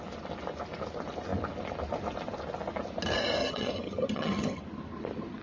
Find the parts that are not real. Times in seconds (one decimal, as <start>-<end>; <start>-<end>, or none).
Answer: 3.4-4.6